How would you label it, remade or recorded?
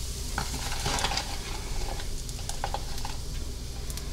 recorded